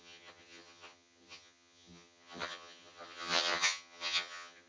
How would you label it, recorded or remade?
remade